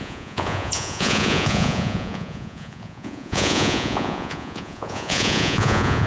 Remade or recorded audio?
remade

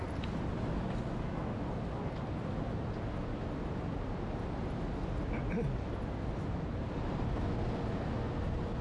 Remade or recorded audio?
recorded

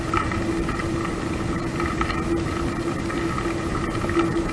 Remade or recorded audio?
recorded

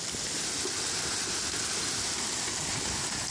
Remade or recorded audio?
recorded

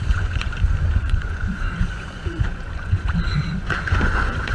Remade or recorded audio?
remade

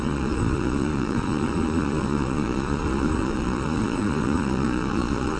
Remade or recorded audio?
remade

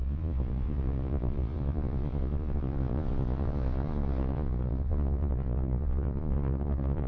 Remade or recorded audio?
remade